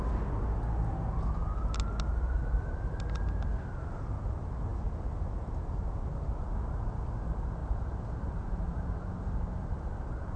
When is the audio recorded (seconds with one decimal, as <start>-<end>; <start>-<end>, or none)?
0.0-2.1; 2.8-7.6; 9.9-10.4